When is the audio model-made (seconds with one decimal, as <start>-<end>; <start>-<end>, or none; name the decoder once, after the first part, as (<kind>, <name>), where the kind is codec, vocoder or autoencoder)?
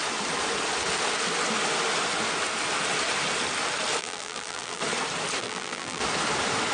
4.0-4.8 (vocoder, BigVGAN v2); 5.4-6.0